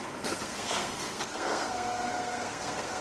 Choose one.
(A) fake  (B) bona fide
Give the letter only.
A